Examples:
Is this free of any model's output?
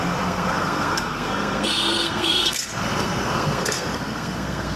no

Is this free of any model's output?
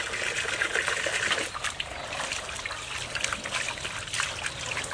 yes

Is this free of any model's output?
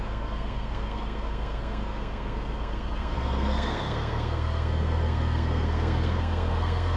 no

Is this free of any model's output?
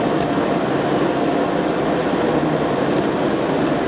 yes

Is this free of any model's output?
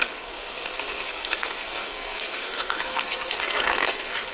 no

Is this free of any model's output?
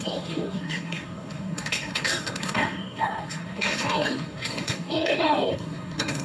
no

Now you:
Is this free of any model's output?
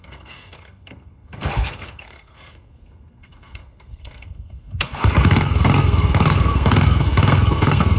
no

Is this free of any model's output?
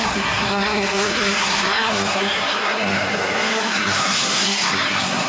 no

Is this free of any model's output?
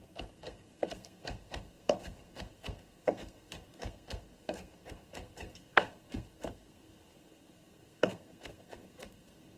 no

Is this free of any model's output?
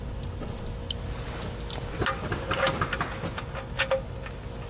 yes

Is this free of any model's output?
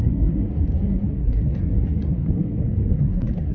no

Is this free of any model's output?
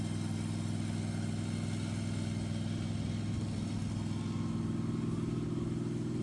yes